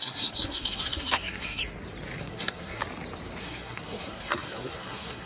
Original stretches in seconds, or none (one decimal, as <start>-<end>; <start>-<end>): 1.6-2.2; 2.8-3.4